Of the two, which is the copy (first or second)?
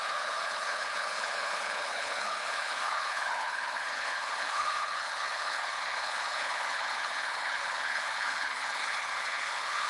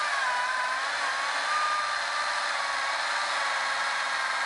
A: first